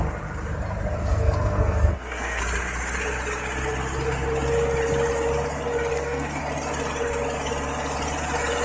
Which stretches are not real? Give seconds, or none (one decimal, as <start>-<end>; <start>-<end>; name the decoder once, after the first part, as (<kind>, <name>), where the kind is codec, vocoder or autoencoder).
1.0-2.4 (codec, SNAC); 5.9-6.4